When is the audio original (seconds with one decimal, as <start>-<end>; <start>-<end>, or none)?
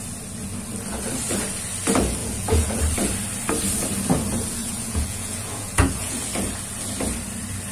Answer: 0.0-2.2; 2.8-4.6; 6.2-7.7